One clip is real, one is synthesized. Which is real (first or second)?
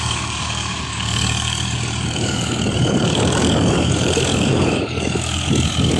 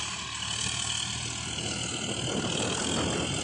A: second